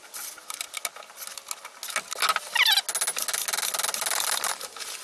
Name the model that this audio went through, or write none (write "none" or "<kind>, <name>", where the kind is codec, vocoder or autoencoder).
none